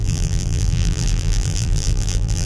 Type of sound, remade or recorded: remade